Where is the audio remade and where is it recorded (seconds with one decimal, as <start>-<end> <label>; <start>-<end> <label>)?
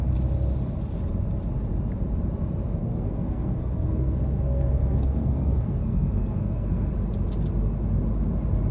0.0-2.8 recorded; 2.8-6.9 remade; 6.9-8.7 recorded